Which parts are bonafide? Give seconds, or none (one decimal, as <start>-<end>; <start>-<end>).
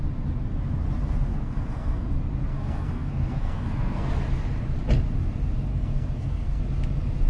0.0-1.3; 2.1-2.5; 4.1-5.7; 6.6-7.3